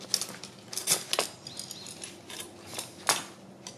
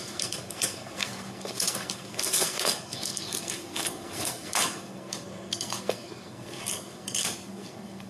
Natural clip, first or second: first